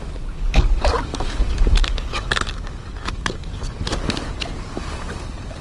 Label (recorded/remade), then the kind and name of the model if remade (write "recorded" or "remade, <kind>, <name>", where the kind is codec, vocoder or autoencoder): remade, codec, DAC